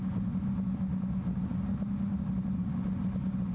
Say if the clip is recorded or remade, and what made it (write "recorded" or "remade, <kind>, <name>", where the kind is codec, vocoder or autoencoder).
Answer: recorded